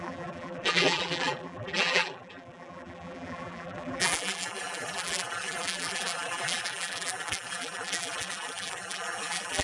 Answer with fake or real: fake